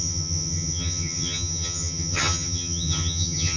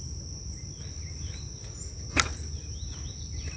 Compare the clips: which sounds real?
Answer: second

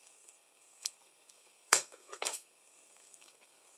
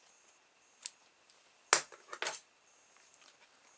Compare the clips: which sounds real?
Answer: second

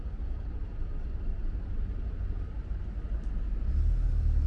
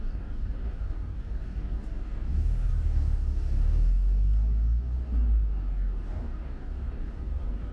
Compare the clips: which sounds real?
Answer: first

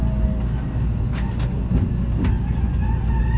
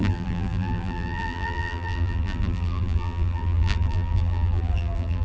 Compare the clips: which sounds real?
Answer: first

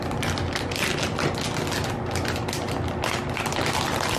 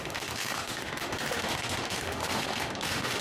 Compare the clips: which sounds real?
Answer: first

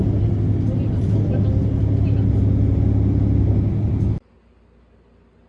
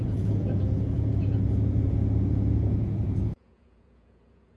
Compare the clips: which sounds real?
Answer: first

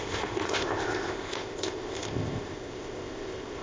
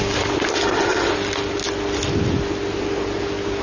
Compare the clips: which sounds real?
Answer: second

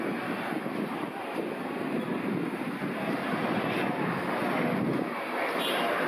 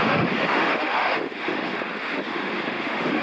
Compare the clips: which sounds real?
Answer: first